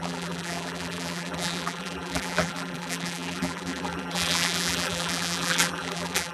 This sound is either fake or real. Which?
fake